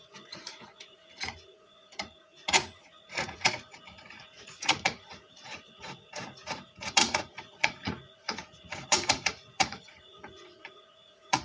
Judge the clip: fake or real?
fake